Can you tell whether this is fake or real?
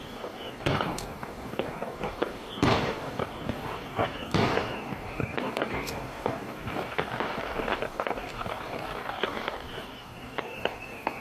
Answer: fake